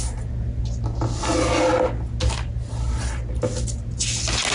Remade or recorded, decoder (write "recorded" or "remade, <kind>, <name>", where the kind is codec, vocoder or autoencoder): recorded